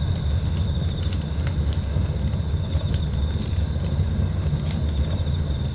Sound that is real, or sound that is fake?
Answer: real